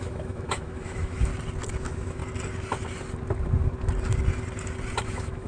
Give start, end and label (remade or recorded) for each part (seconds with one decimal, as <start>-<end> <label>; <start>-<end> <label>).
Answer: 0.0-1.3 remade; 1.3-1.8 recorded; 1.8-2.2 remade; 2.2-5.0 recorded; 5.0-5.5 remade